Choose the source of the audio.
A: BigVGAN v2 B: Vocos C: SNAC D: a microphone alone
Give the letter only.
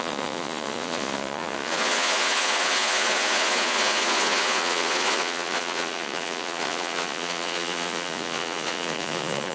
B